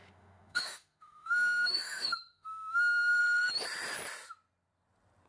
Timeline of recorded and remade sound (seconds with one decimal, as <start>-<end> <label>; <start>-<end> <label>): 0.0-3.2 remade; 3.2-5.3 recorded